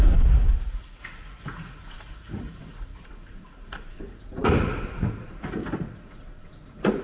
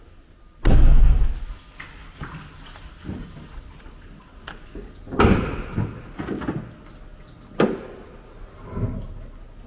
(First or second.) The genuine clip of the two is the second